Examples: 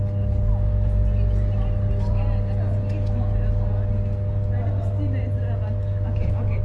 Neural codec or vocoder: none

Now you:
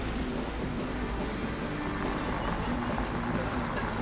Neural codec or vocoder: none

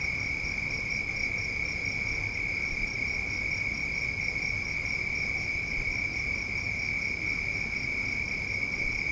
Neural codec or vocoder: none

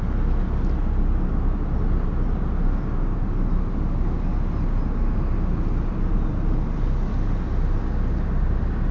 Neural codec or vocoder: none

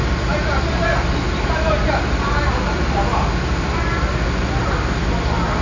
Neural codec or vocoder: none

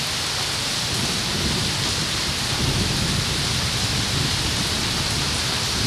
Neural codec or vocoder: none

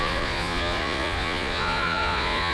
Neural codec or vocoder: vocoder, Vocos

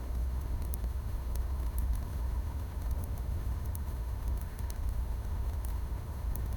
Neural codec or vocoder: autoencoder, DAC-VAE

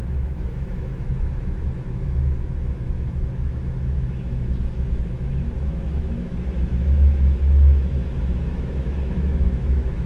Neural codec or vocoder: autoencoder, DAC-VAE